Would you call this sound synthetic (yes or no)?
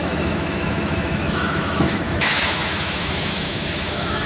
yes